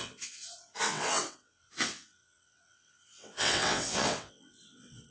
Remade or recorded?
remade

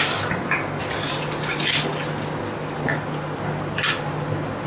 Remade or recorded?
recorded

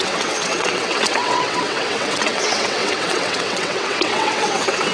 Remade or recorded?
remade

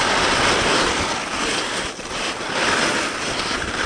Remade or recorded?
recorded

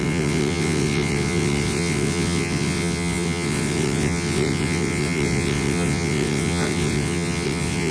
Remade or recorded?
remade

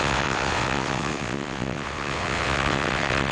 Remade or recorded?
remade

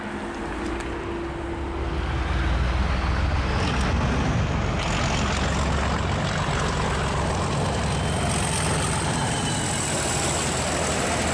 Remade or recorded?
recorded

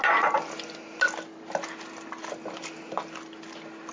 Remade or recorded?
recorded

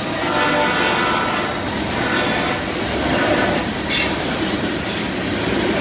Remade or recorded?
recorded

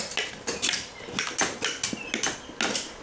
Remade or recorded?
recorded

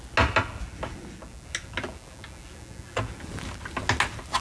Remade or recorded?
recorded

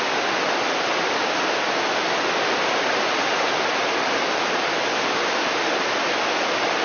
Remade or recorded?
recorded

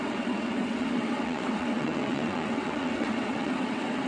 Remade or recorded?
remade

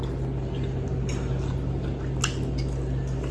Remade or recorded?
recorded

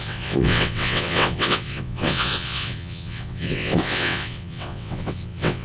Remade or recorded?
remade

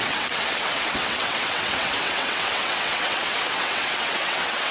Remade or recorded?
remade